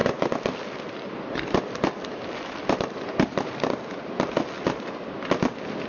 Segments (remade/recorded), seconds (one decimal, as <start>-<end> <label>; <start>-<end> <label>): 0.0-3.5 remade; 3.5-5.9 recorded